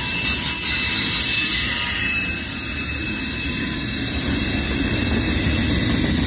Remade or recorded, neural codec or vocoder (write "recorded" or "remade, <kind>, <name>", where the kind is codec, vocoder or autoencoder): recorded